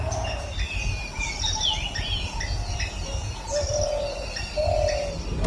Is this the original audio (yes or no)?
yes